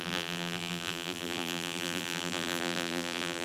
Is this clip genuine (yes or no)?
no